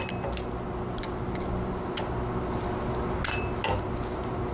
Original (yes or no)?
yes